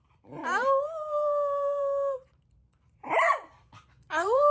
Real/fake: fake